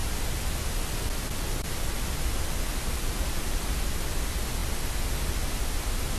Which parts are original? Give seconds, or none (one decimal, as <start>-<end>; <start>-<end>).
0.0-2.7; 3.8-6.2